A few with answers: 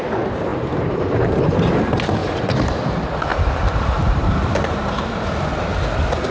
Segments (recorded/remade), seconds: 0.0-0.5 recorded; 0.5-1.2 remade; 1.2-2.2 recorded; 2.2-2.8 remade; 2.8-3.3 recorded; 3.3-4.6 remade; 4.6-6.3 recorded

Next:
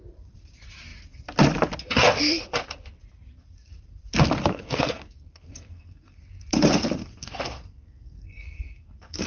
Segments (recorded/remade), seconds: 0.0-4.5 recorded; 4.5-6.2 remade; 6.2-7.0 recorded; 7.0-9.3 remade

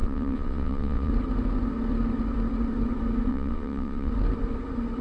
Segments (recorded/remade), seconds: 0.0-1.1 remade; 1.1-3.3 recorded; 3.3-4.1 remade; 4.1-5.0 recorded